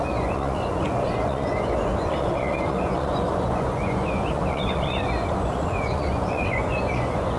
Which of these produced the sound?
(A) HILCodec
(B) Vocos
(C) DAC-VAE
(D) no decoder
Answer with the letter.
B